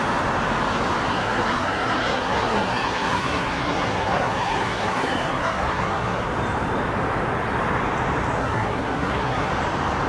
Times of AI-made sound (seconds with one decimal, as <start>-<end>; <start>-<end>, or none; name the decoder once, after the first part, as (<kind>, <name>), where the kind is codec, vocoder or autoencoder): 1.1-6.3 (codec, SNAC); 8.4-9.5